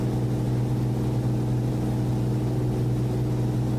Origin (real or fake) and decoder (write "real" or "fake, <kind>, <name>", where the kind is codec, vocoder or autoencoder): real